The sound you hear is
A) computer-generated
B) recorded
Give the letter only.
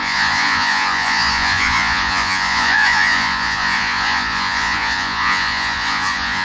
A